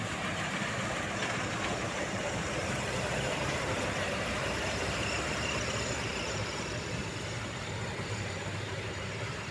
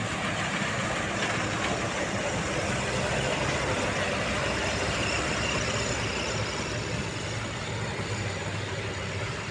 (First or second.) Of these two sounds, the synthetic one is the first